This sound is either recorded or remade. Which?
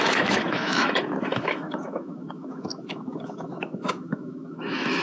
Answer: remade